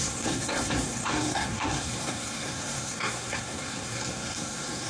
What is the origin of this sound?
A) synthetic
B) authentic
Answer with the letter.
A